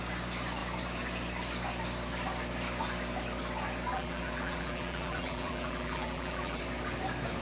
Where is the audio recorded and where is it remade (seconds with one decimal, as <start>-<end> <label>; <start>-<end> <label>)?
0.0-3.9 recorded; 3.9-6.6 remade; 6.6-7.4 recorded